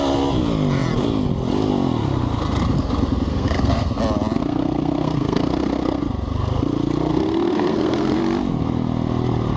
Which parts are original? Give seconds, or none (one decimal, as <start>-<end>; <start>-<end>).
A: 0.0-3.3; 4.0-4.4; 6.0-7.1; 8.2-9.6